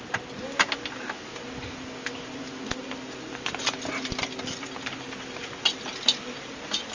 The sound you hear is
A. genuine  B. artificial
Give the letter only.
A